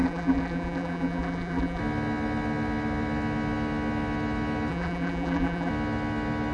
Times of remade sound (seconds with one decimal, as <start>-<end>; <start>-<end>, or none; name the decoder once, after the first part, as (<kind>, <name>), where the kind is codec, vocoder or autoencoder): 0.0-1.8 (vocoder, BigVGAN v2); 4.7-5.7